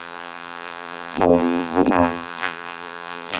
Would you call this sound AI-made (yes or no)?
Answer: yes